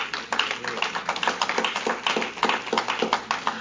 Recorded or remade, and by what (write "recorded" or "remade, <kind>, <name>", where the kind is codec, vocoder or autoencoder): recorded